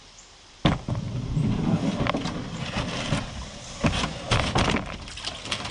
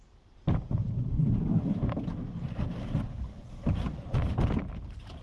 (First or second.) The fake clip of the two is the second